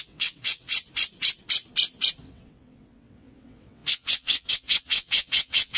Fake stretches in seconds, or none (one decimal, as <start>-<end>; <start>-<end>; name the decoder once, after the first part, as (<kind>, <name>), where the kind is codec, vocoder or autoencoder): 0.0-0.7 (vocoder, WaveNeXt); 2.2-5.8